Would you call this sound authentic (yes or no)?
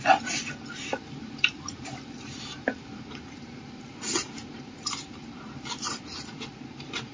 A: no